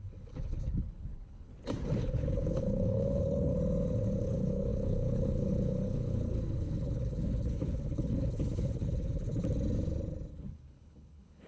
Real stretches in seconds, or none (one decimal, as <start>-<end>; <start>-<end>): 1.5-2.0; 3.5-4.2; 9.3-10.3